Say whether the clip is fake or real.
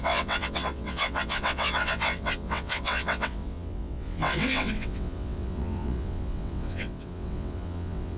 fake